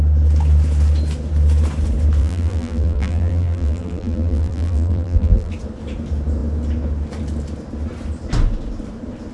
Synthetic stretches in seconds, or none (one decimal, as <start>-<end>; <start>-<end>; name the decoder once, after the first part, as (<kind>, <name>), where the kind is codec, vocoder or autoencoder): 2.2-5.5 (vocoder, BigVGAN v2)

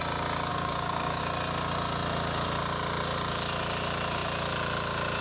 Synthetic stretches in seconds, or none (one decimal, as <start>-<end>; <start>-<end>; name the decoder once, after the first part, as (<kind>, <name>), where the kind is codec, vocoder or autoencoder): 0.5-1.2 (codec, DAC)

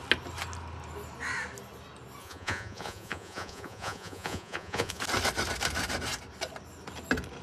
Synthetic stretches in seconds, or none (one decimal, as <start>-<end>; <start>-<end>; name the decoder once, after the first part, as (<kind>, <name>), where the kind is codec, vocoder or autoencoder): 2.2-5.0 (vocoder, Vocos)

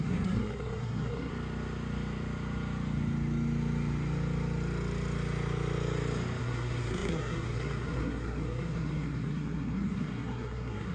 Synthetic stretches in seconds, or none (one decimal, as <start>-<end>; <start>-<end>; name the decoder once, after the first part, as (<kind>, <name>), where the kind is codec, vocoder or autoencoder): 0.0-1.3 (codec, SNAC); 6.4-10.9

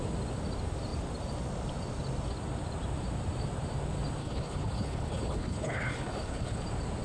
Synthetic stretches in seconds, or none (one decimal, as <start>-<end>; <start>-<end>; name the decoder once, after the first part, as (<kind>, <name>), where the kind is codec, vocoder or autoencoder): 4.2-6.6 (codec, HILCodec)

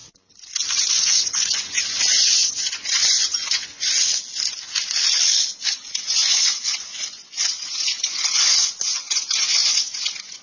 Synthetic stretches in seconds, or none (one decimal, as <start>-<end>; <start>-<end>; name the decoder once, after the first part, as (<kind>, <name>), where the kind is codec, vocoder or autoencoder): 0.8-3.9 (vocoder, Vocos); 5.7-10.4

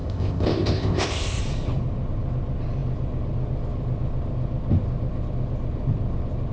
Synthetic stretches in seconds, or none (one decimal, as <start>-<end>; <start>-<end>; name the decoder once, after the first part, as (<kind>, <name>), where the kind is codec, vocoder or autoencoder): 0.0-1.4 (codec, ZipCodec)

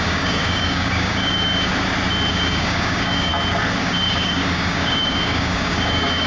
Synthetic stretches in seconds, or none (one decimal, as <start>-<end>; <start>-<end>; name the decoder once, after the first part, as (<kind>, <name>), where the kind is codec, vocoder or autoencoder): 0.0-1.7 (codec, DAC); 2.3-3.3; 3.8-6.3